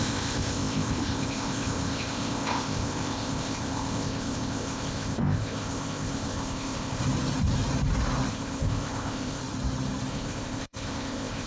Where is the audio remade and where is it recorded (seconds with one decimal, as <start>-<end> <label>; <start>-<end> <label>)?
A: 0.0-7.0 remade; 7.0-8.3 recorded; 8.3-9.4 remade; 9.4-10.1 recorded; 10.1-11.5 remade